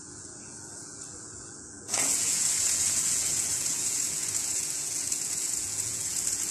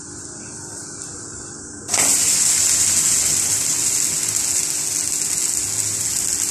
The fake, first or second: first